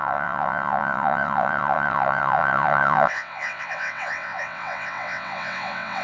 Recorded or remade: remade